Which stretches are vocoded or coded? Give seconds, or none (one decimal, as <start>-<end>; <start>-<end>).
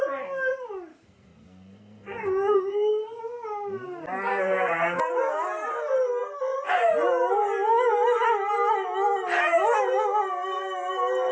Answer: 0.9-3.2; 4.3-5.0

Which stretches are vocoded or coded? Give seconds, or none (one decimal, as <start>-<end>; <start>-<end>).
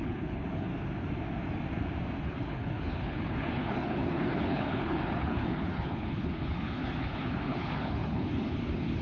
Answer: 0.0-0.7; 2.2-9.0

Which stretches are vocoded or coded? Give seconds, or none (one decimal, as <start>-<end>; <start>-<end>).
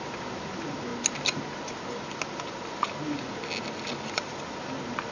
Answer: none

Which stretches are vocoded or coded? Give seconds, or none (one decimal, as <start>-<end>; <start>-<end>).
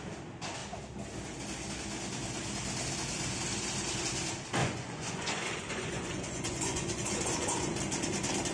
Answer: 4.6-7.8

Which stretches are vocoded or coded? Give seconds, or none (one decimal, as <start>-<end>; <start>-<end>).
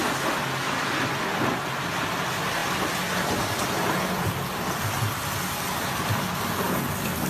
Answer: none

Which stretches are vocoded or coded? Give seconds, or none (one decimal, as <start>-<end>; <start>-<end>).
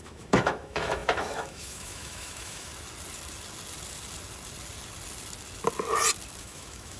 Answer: 0.0-2.7; 6.4-7.0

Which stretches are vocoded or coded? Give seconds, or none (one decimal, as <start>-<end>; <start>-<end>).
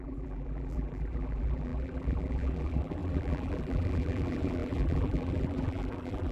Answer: 0.0-6.3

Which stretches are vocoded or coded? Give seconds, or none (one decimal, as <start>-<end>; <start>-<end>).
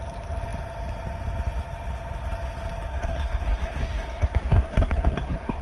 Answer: 2.9-5.6